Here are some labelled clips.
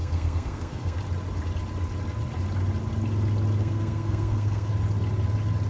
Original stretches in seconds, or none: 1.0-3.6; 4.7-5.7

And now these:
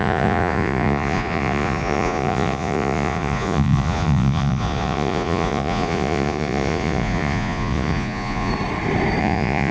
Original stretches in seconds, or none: 8.5-9.2

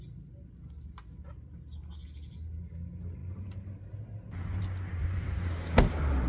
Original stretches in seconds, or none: 0.0-6.3